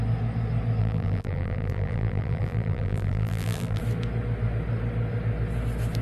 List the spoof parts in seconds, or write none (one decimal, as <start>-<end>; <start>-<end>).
0.8-3.8